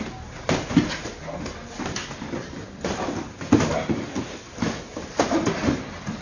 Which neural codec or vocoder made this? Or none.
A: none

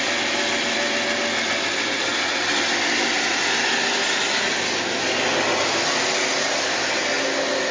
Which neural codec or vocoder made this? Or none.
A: none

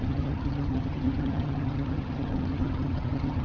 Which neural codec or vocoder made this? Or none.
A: vocoder, HiFi-GAN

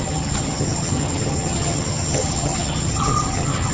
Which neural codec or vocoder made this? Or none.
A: vocoder, HiFi-GAN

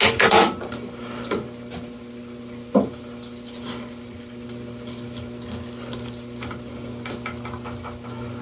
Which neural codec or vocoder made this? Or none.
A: none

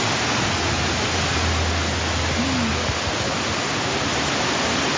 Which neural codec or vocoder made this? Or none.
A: none